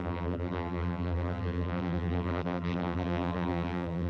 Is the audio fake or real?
fake